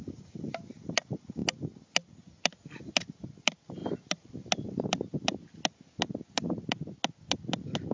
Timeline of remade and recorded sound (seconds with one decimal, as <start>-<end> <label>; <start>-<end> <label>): 0.0-7.9 recorded